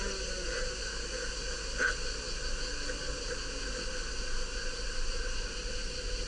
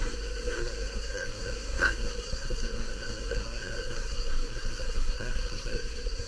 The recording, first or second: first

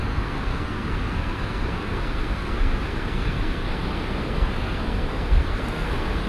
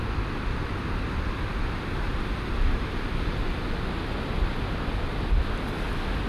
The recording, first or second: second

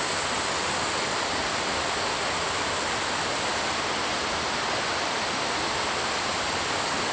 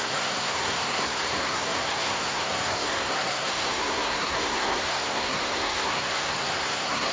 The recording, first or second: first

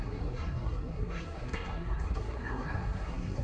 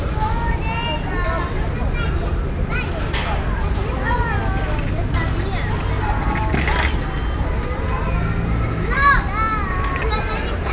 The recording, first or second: second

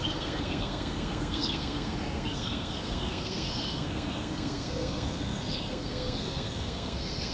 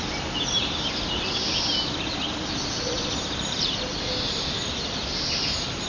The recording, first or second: second